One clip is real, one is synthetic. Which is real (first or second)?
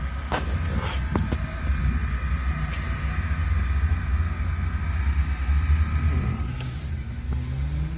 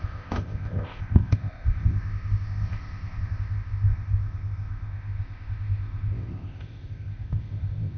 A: first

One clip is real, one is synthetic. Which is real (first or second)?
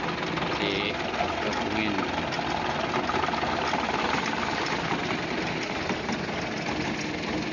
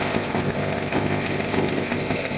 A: first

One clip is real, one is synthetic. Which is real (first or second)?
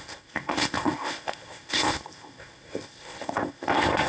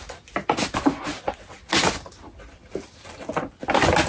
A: second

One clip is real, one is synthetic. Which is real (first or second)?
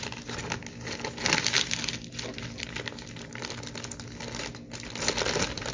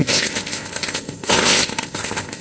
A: first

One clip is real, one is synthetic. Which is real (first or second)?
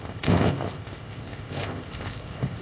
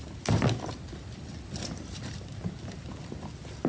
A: second